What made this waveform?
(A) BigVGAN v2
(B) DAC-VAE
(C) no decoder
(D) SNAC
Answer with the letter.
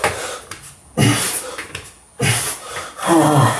C